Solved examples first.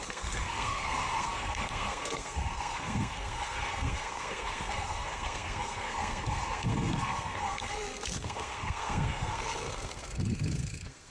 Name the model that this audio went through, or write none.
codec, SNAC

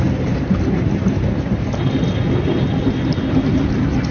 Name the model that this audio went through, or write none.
none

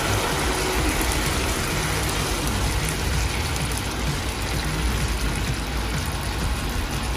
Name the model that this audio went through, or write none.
none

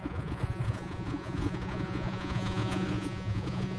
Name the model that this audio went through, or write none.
vocoder, Vocos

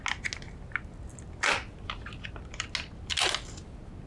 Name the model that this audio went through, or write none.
none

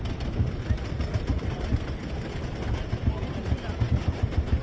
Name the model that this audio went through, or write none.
none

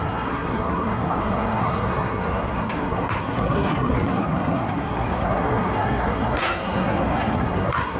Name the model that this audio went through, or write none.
codec, SNAC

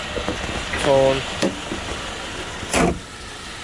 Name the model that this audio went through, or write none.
none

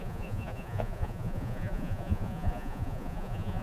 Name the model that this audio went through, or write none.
vocoder, Vocos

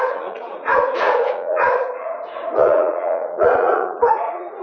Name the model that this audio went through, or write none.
vocoder, Vocos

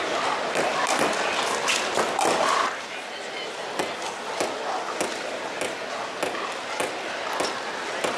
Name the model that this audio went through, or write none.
none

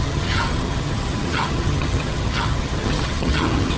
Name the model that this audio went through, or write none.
vocoder, HiFi-GAN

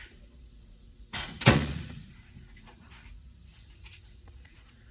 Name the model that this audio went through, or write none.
vocoder, Vocos